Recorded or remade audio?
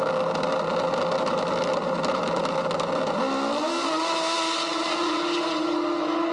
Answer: recorded